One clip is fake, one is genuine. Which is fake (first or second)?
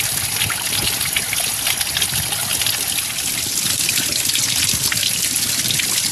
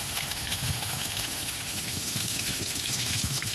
second